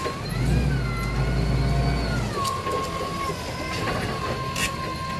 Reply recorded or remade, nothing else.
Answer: recorded